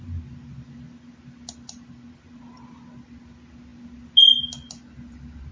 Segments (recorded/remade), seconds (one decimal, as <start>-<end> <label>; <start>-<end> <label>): 0.0-5.5 recorded